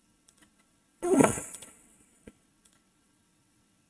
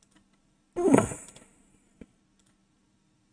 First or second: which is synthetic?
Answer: first